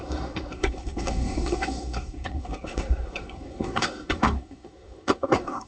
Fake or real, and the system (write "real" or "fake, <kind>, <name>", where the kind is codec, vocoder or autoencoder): fake, codec, SNAC